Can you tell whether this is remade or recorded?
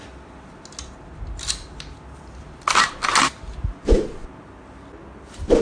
recorded